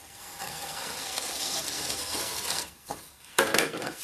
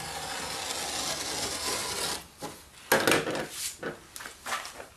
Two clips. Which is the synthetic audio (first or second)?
first